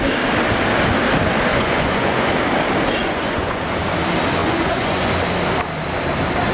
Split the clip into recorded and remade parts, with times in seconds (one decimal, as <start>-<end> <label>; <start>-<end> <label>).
0.0-1.5 recorded; 1.5-2.3 remade; 2.3-3.0 recorded; 3.0-3.6 remade; 3.6-4.4 recorded; 4.4-5.1 remade; 5.1-6.5 recorded